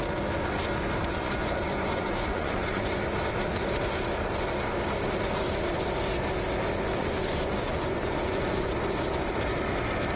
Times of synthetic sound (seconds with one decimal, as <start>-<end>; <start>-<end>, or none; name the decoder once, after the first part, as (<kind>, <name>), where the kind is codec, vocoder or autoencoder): 1.1-3.0 (vocoder, Vocos); 7.0-8.7